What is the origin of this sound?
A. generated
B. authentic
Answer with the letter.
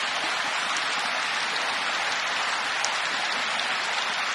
B